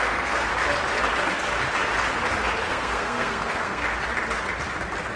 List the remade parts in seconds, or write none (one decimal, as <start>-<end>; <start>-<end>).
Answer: 0.0-0.5; 2.7-3.8